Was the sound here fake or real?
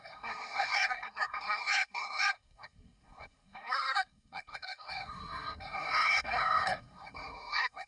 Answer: fake